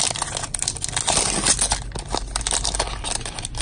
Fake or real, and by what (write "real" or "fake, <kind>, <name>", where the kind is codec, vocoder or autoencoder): real